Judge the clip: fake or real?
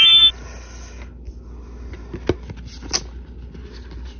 real